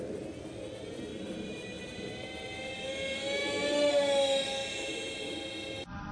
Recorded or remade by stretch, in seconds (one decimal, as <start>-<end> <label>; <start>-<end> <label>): 0.0-1.1 recorded; 1.1-2.1 remade; 2.1-4.6 recorded; 4.6-5.3 remade; 5.3-6.1 recorded